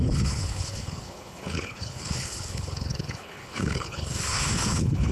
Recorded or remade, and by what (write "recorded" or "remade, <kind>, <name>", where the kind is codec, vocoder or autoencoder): remade, codec, HILCodec